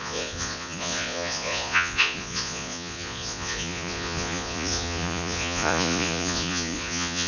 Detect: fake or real fake